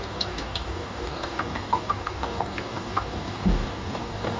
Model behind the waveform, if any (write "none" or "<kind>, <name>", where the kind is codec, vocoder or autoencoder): codec, DAC